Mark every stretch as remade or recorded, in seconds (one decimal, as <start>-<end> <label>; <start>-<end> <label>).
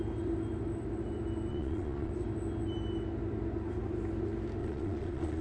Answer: 0.0-1.5 recorded; 1.5-2.1 remade; 2.1-4.6 recorded; 4.6-5.4 remade